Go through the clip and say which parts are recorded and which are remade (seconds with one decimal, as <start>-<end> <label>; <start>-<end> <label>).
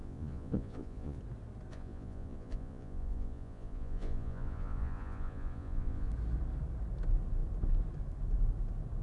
0.0-1.2 remade; 1.2-1.7 recorded; 1.7-6.1 remade; 6.1-9.0 recorded